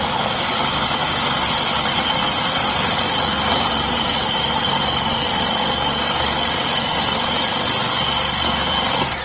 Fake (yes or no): no